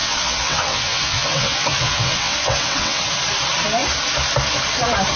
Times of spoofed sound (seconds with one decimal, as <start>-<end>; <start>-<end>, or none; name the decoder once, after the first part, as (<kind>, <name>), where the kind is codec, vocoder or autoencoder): 0.0-3.1 (vocoder, WaveNeXt)